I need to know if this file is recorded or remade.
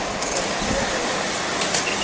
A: recorded